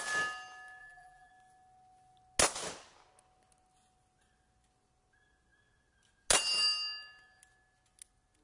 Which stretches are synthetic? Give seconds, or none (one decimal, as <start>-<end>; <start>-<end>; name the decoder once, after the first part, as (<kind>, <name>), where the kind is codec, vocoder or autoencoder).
0.8-1.3 (vocoder, BigVGAN v2)